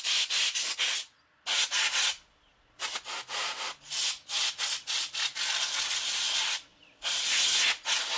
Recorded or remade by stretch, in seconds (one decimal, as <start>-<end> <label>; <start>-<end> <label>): 0.0-6.7 recorded; 6.7-7.3 remade; 7.3-8.2 recorded